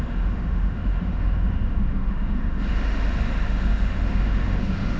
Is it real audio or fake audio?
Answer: fake